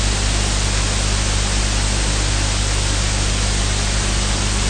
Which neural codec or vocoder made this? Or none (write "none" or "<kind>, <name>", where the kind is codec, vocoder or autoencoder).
none